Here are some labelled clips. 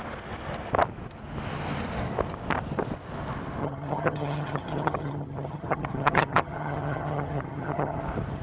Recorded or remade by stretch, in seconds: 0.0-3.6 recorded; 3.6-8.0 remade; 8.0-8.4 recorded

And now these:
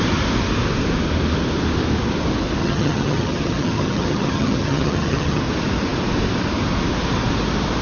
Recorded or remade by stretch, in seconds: 0.0-2.6 recorded; 2.6-5.4 remade; 5.4-7.8 recorded

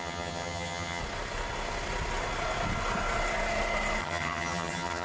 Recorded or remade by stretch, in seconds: 0.0-1.0 remade; 1.0-4.0 recorded; 4.0-5.0 remade

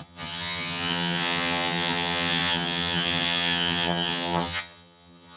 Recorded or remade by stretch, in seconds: 0.0-5.4 remade

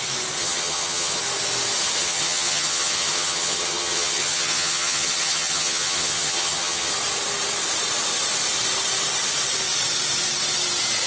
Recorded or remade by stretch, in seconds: 0.0-0.4 recorded; 0.4-1.2 remade; 1.2-2.0 recorded; 2.0-6.9 remade; 6.9-11.1 recorded